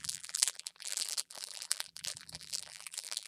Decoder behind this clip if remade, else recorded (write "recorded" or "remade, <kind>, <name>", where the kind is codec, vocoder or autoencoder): remade, vocoder, BigVGAN v2